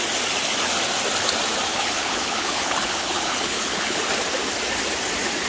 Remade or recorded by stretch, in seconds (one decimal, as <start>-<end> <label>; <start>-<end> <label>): 0.0-1.7 recorded; 1.7-4.0 remade; 4.0-5.5 recorded